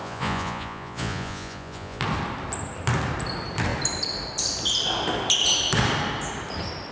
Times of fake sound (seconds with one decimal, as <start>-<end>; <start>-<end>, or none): 0.0-2.0